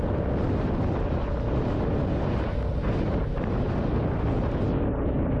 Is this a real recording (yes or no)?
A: yes